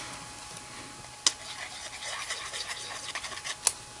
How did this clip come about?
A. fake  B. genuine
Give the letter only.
B